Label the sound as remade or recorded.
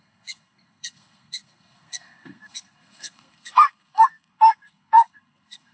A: remade